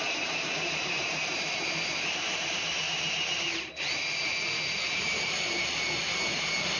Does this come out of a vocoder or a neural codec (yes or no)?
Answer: yes